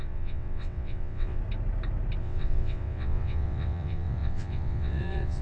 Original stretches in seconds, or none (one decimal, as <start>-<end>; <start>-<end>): 1.4-2.2